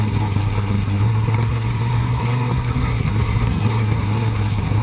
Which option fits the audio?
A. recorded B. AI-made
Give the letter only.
B